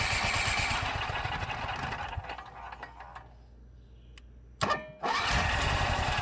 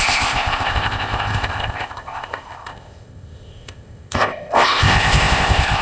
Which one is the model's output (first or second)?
second